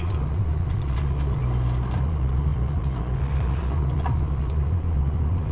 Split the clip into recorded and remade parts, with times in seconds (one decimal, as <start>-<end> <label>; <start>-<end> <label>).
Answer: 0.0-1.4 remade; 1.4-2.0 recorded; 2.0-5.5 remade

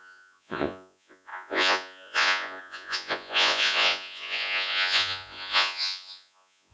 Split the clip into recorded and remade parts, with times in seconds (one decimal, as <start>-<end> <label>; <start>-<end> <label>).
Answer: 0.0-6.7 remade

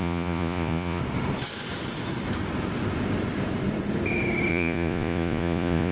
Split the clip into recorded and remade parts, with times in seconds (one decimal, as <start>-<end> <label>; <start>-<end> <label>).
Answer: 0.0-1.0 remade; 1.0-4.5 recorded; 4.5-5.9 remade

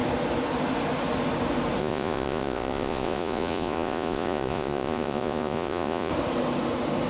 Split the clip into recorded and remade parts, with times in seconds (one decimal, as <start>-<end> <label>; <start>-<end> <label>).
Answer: 0.0-1.8 recorded; 1.8-6.1 remade; 6.1-7.1 recorded

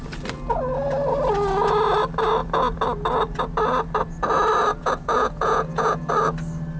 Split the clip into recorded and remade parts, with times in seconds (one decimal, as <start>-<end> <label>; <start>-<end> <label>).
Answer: 0.0-4.7 recorded; 4.7-6.1 remade; 6.1-6.8 recorded